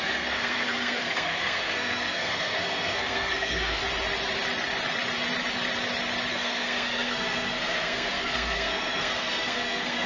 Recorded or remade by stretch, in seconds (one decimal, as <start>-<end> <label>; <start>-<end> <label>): 0.0-3.8 remade; 3.8-6.3 recorded; 6.3-10.1 remade